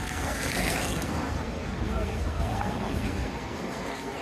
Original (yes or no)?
no